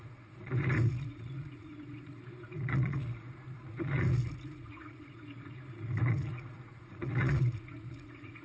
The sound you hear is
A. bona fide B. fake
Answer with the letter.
B